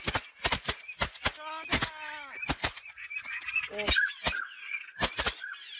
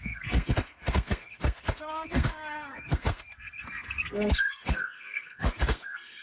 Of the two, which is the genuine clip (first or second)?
first